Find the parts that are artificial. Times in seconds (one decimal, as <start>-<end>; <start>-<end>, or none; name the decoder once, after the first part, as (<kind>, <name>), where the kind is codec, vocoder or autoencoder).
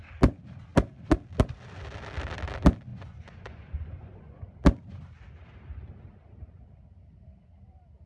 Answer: 2.9-4.4 (vocoder, Vocos)